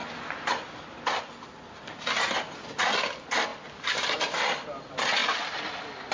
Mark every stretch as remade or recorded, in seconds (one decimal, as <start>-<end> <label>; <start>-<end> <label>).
0.0-6.1 recorded